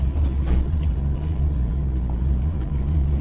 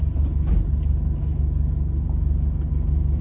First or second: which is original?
second